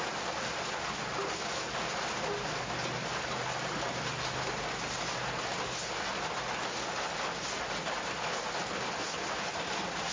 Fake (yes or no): no